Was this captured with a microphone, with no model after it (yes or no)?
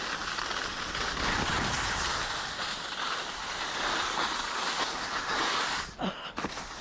yes